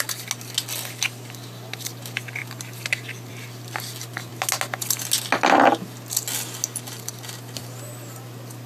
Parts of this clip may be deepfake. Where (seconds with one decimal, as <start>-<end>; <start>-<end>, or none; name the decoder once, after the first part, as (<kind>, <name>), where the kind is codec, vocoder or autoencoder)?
none